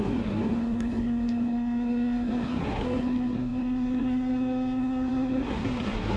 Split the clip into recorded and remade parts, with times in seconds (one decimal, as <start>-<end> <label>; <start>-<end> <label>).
0.0-6.2 remade